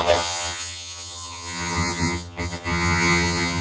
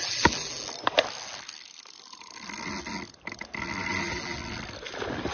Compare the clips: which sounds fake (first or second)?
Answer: first